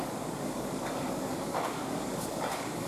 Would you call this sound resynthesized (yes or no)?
yes